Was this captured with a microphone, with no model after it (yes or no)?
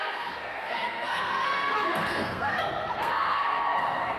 no